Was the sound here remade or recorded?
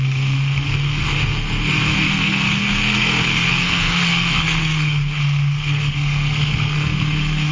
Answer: remade